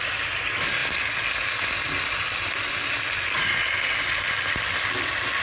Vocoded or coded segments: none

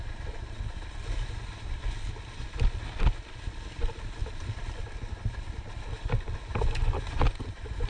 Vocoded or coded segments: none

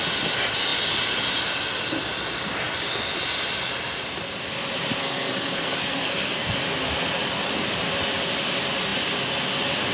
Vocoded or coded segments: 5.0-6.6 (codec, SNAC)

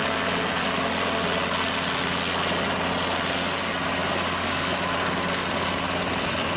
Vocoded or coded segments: 4.0-4.7 (codec, DAC)

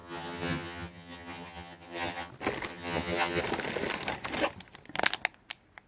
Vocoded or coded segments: 0.0-2.3 (vocoder, HiFi-GAN); 2.7-3.4

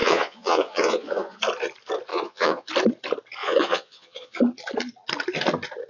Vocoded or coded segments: 0.0-1.4 (vocoder, Vocos); 2.1-2.7; 3.4-4.4

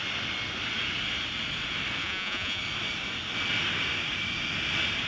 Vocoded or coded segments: 2.0-2.6 (vocoder, Vocos)

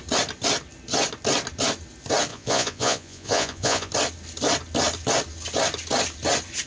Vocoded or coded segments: 2.3-3.9 (vocoder, Vocos)